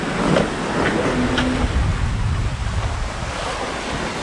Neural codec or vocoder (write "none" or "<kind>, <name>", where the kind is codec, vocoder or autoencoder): none